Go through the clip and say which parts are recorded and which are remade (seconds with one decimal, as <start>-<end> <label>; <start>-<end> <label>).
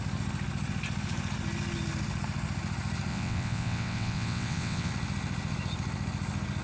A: 0.0-3.1 recorded; 3.1-4.9 remade; 4.9-6.6 recorded